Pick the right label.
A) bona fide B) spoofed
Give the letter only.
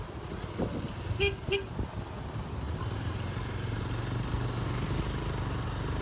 A